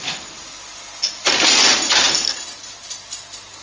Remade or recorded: recorded